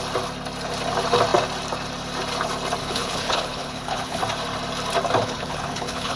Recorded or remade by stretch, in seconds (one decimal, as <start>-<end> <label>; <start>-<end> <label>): 0.0-2.8 recorded; 2.8-4.2 remade; 4.2-5.2 recorded; 5.2-6.2 remade

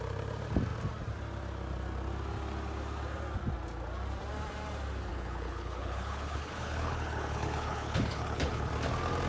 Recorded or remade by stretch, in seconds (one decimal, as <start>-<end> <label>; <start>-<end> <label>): 0.0-5.1 recorded; 5.1-8.7 remade; 8.7-9.3 recorded